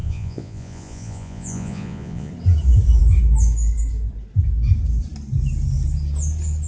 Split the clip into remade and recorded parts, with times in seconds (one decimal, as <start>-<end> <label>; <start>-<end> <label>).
0.0-2.3 remade; 2.3-6.7 recorded